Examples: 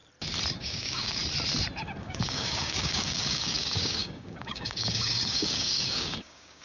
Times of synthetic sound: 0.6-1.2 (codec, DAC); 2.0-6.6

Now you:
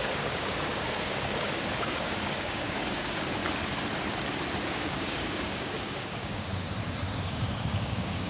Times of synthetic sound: 0.0-3.4 (codec, DAC); 4.7-6.5; 7.2-8.3

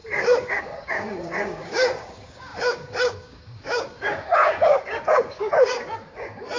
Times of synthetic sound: 0.0-6.6 (codec, DAC)

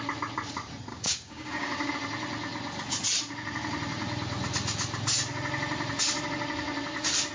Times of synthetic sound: 0.9-1.9 (codec, DAC)